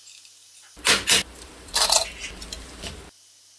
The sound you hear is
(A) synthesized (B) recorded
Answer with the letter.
B